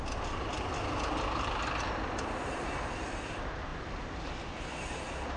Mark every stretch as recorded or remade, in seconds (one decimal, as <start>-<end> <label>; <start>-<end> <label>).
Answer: 0.0-5.4 recorded